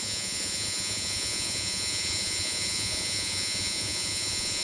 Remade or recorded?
remade